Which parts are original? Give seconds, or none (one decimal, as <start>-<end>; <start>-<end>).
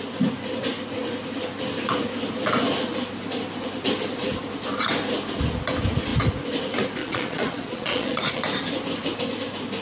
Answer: 0.0-7.0; 8.4-9.8